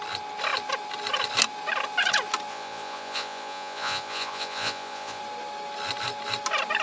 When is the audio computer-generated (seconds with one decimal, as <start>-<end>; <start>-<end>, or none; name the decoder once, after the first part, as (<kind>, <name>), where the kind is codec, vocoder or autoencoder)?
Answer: 2.5-5.2 (vocoder, Vocos)